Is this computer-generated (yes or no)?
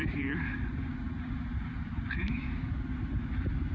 yes